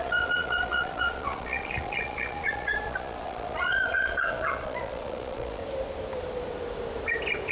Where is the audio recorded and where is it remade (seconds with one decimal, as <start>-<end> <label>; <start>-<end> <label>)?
0.0-5.6 remade; 5.6-7.5 recorded